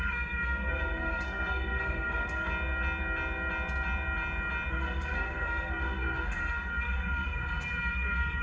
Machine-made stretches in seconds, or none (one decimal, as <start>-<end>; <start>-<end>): 0.0-2.5; 4.7-8.4